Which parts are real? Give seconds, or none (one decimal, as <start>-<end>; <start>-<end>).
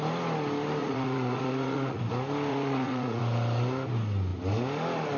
0.0-0.8; 2.0-2.5; 3.2-5.2